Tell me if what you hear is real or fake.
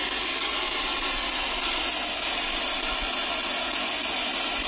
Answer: real